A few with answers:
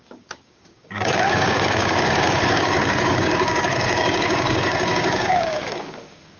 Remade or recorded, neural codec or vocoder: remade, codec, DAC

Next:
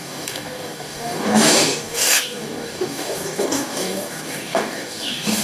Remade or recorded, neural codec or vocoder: remade, codec, DAC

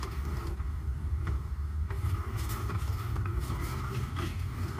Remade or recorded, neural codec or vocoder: remade, codec, DAC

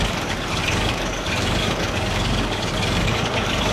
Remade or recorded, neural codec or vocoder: remade, codec, DAC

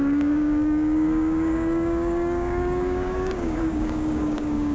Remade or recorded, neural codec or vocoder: remade, codec, DAC